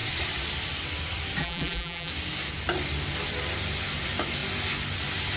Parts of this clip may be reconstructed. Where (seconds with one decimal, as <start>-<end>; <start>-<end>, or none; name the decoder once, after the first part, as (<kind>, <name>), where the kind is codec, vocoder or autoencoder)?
1.4-2.1 (vocoder, BigVGAN v2)